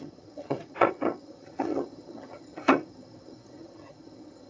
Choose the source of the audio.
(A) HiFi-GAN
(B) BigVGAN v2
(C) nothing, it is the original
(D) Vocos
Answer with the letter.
A